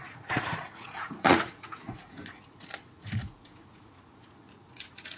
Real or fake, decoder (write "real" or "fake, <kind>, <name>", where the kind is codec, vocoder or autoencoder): fake, vocoder, Vocos